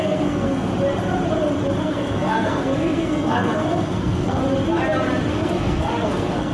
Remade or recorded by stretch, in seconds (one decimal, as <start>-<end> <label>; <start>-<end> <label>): 0.0-0.7 remade; 0.7-1.8 recorded; 1.8-4.4 remade; 4.4-5.3 recorded; 5.3-6.5 remade